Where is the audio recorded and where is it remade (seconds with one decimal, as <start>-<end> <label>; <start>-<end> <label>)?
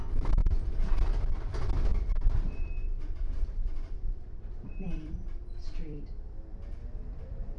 0.0-7.6 remade